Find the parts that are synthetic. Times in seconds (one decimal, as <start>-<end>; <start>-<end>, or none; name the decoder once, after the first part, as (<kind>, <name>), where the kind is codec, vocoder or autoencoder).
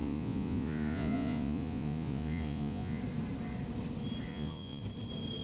0.0-3.0 (vocoder, Vocos); 4.3-4.8